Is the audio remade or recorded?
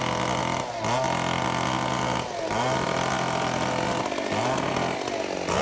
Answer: recorded